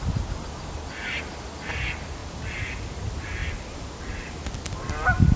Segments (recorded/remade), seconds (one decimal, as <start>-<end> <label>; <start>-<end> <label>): 0.0-5.4 recorded